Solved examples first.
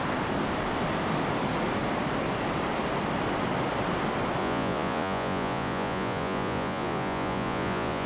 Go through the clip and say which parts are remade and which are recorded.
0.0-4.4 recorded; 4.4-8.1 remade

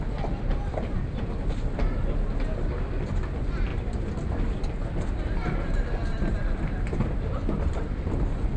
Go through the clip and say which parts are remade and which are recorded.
0.0-8.6 recorded